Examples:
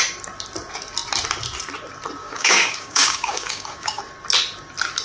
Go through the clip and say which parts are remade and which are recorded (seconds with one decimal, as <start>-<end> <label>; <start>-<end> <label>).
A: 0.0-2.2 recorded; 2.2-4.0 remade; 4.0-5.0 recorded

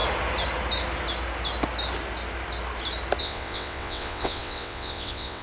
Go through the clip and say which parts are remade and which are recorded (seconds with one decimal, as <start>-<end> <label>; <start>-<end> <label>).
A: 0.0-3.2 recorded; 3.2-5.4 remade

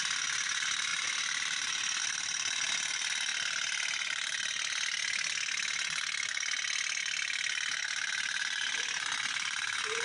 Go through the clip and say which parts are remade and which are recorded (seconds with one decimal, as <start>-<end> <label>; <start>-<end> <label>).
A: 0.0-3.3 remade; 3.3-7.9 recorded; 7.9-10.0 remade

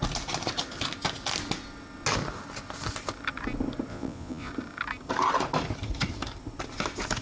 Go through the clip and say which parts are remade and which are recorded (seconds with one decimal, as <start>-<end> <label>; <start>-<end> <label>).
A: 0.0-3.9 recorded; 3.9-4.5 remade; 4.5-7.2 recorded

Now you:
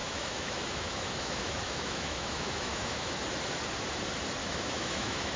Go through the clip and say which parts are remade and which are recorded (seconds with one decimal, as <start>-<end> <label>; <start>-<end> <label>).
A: 0.0-3.2 remade; 3.2-4.4 recorded; 4.4-5.4 remade

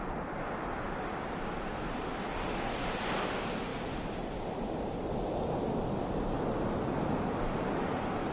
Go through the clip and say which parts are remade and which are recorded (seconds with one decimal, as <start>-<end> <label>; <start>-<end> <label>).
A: 0.0-8.3 recorded

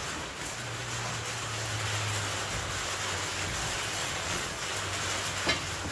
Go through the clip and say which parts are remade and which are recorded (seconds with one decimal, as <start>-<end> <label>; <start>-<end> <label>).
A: 0.0-4.0 recorded; 4.0-4.7 remade; 4.7-5.9 recorded